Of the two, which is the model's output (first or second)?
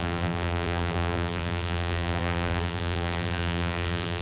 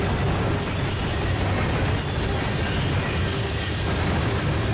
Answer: first